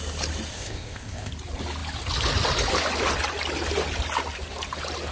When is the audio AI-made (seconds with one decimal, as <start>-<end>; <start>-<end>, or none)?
0.5-1.3